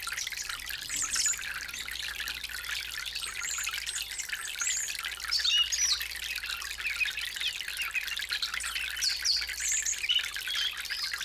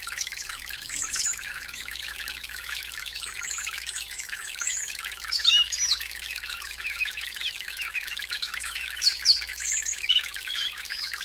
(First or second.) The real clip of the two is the first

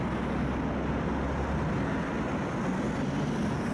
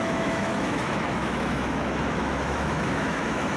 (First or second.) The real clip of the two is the first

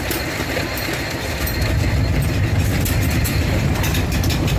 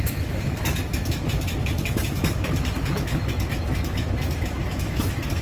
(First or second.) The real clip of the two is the first